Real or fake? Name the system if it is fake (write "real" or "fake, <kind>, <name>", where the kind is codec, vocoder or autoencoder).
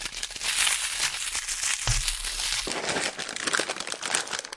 real